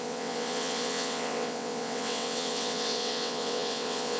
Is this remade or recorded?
remade